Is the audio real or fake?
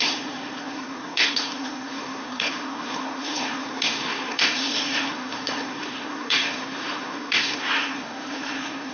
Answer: fake